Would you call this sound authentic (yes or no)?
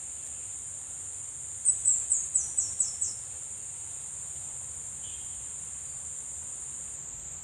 yes